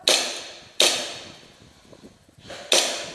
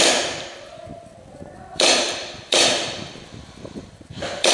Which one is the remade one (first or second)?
second